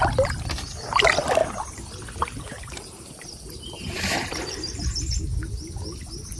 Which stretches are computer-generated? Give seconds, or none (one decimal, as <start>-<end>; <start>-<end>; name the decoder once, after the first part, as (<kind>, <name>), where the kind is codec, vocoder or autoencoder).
1.4-5.2 (vocoder, BigVGAN v2)

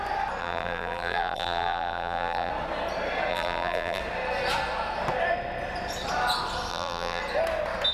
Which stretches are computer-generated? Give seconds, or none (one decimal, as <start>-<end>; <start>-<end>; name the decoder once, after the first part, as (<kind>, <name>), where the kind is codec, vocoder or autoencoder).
0.4-2.5 (vocoder, BigVGAN v2); 3.3-4.0; 6.7-7.2

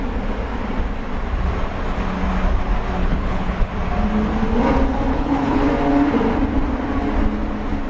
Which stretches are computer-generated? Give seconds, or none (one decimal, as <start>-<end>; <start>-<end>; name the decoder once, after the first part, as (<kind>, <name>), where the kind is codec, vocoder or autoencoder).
3.0-3.7 (codec, HILCodec); 5.1-5.7

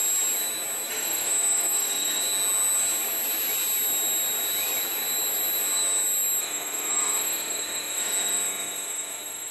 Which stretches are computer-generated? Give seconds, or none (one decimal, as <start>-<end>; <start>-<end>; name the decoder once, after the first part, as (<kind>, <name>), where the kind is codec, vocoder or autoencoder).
0.9-2.2 (autoencoder, DAC-VAE); 6.4-9.5